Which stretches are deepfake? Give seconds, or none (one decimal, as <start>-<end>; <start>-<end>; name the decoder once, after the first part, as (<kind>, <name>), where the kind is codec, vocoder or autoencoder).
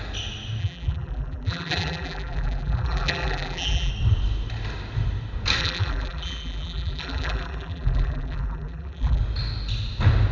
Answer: 0.6-3.9 (vocoder, BigVGAN v2); 5.6-9.2